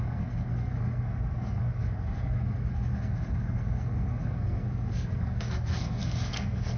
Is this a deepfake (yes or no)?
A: yes